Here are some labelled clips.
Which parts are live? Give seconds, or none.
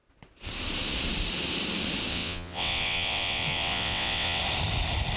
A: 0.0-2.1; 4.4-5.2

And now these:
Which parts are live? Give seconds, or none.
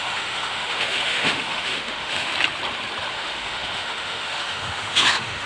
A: 2.3-3.1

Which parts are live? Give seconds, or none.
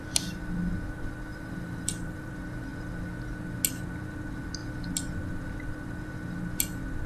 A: 0.0-1.3; 2.3-7.1